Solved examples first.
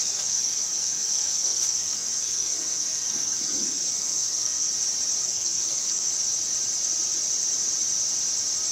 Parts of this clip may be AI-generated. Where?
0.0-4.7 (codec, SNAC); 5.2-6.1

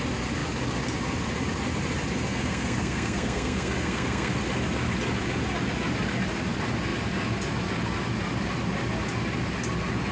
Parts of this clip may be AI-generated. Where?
2.3-4.3 (codec, SNAC)

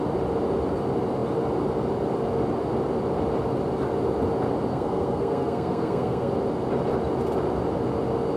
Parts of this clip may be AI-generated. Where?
4.7-6.3 (codec, SNAC)

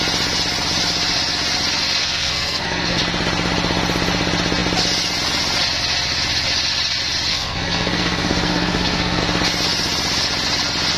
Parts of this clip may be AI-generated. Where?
2.0-3.0 (codec, SNAC); 7.3-9.2

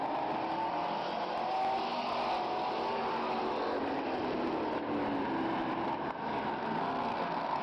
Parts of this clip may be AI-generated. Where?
6.6-7.6 (codec, SNAC)

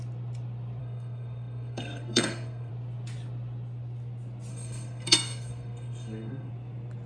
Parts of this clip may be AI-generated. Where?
0.8-2.7 (codec, SNAC); 4.5-6.5

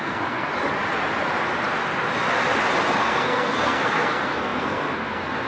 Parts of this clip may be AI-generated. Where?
0.0-0.5 (codec, SNAC); 3.0-5.5